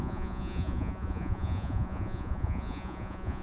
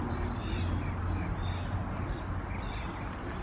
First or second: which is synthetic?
first